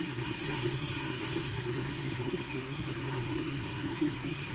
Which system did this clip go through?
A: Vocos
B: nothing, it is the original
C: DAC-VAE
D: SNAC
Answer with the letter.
D